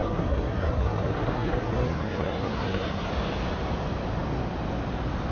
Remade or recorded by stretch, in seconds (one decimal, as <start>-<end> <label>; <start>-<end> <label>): 0.0-3.1 remade; 3.1-5.3 recorded